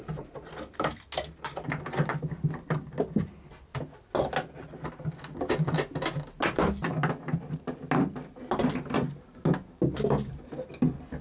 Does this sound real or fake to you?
real